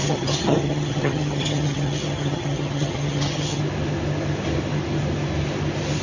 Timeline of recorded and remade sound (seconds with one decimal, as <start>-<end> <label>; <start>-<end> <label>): 0.0-3.6 remade; 3.6-6.0 recorded